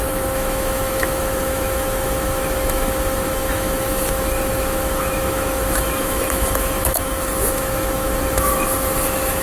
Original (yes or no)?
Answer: no